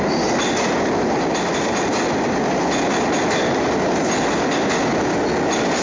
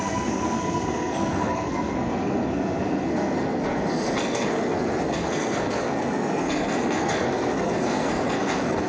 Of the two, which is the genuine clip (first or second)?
first